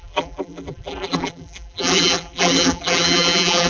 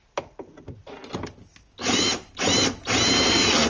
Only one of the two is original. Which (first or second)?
second